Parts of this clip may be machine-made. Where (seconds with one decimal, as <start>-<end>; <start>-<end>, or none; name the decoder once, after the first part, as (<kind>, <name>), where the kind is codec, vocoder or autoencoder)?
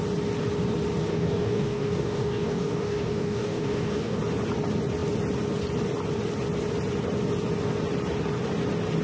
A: 1.1-4.2 (codec, DAC)